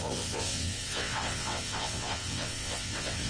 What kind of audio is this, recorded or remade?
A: remade